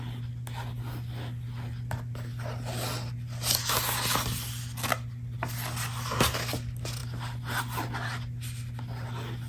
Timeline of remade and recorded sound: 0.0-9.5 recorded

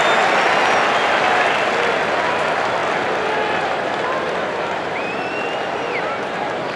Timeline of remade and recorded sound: 0.0-6.8 recorded

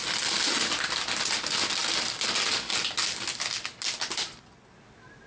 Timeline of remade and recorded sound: 0.0-5.3 recorded